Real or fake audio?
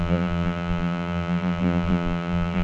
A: fake